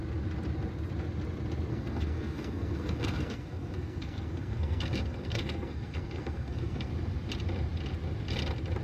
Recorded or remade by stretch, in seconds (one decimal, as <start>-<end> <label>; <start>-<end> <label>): 0.0-1.7 recorded; 1.7-6.9 remade; 6.9-8.8 recorded